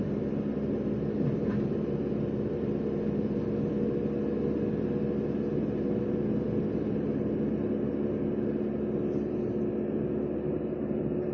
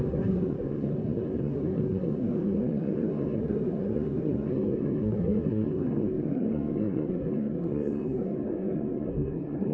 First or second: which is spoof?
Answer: second